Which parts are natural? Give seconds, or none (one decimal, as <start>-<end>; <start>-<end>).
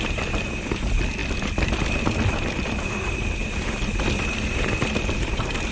0.0-5.7